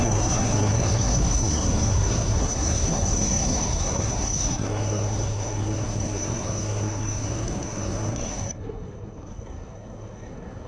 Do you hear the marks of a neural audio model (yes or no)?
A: yes